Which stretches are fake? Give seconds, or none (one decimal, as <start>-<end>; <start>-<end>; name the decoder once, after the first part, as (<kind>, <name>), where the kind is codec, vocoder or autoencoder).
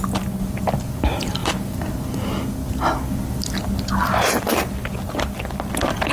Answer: none